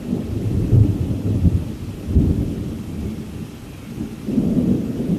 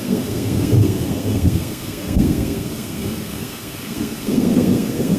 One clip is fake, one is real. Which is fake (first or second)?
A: second